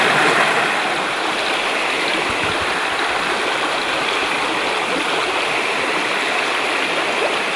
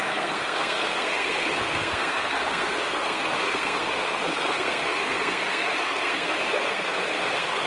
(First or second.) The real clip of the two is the first